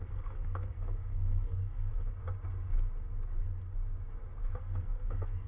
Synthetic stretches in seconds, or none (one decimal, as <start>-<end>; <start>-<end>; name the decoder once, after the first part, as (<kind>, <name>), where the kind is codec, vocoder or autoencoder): 0.0-1.9 (codec, SNAC); 4.4-5.5